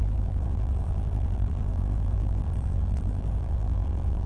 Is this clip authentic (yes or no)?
no